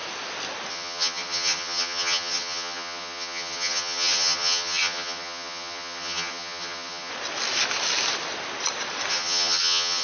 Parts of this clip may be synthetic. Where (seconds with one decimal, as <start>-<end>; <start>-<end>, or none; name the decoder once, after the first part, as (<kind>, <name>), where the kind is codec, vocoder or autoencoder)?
0.7-7.1 (vocoder, HiFi-GAN); 9.1-10.0